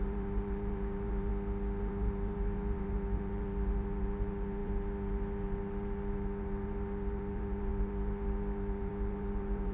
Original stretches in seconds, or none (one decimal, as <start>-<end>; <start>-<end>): 1.3-1.8